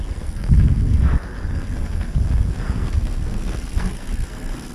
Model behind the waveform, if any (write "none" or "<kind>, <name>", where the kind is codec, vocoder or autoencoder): codec, SNAC